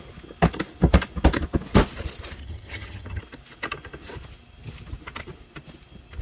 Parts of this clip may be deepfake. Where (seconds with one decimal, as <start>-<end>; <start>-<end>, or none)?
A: 2.4-3.2

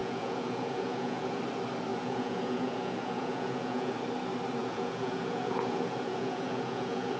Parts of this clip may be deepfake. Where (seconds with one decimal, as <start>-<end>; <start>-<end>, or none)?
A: 0.0-1.4; 1.9-3.9; 4.6-7.2

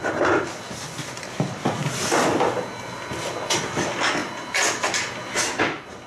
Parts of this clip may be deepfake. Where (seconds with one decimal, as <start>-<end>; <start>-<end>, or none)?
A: none

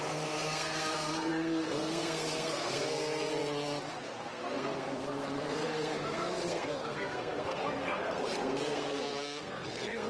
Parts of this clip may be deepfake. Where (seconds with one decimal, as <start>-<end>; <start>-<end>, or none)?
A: 0.0-3.3; 3.9-10.1

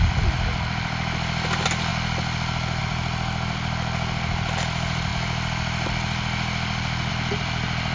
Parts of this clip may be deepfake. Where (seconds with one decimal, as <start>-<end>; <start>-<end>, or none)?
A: 0.0-1.9; 2.8-5.1; 7.1-7.9

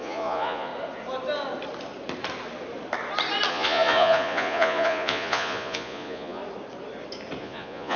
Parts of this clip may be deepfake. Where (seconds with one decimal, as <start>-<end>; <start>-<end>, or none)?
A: 0.0-0.7; 3.5-6.4; 7.4-8.0

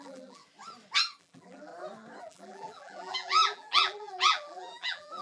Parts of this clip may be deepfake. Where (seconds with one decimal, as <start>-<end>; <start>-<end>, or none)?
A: 0.0-0.4; 1.2-1.7; 2.2-5.2